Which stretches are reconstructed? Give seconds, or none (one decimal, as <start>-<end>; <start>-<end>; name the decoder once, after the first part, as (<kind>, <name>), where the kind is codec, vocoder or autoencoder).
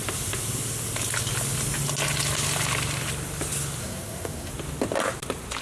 3.8-4.5 (codec, SNAC)